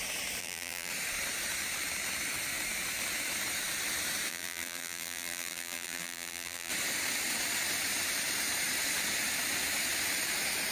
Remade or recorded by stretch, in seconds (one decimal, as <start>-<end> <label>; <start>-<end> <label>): 0.0-0.4 recorded; 0.4-0.9 remade; 0.9-4.3 recorded; 4.3-6.7 remade; 6.7-10.7 recorded